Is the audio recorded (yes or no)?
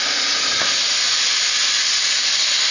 yes